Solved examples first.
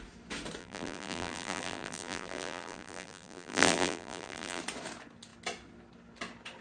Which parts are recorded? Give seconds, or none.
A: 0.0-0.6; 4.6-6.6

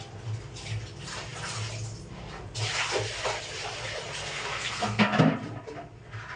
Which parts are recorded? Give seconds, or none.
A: 0.0-4.2; 5.2-6.4

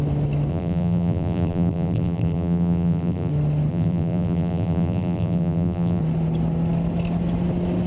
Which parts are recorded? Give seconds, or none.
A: 0.0-0.5; 3.3-3.7; 6.0-7.9

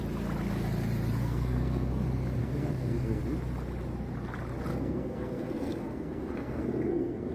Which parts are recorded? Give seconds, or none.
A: 0.0-1.2; 1.9-2.4; 3.2-4.7

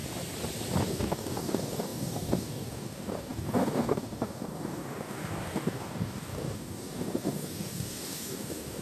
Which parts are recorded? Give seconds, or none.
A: 0.0-0.8

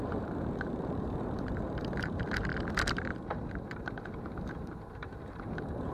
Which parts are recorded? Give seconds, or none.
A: 2.5-3.1

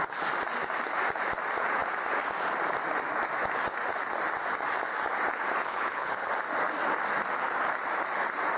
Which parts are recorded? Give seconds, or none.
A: 0.0-5.6; 6.3-8.6

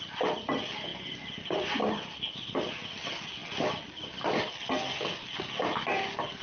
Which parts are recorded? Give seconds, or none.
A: 0.0-6.4